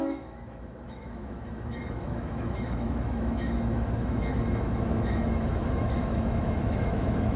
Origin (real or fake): fake